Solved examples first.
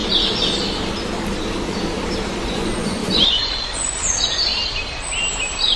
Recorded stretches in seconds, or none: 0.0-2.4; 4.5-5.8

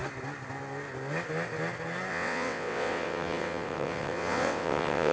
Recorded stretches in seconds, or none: 0.0-2.1